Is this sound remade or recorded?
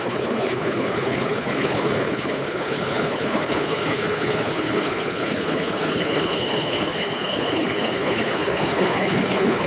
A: remade